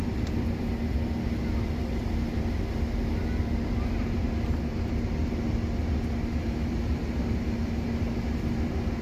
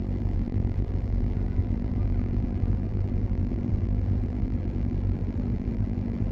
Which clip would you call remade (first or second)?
second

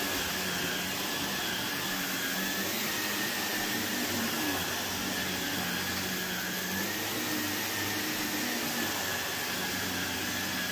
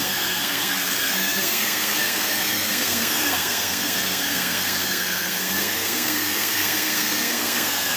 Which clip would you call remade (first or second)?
second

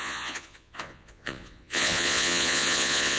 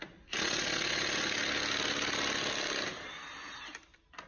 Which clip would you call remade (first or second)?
first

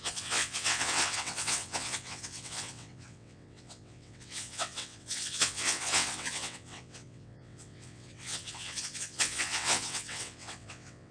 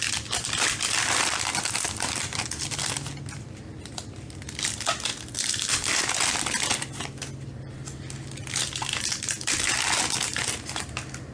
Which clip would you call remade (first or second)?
first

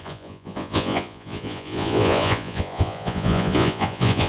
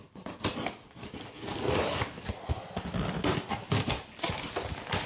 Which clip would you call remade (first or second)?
first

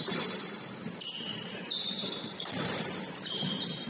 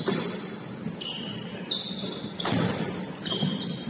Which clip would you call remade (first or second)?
first